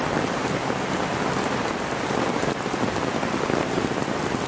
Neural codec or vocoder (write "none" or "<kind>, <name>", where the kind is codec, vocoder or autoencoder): none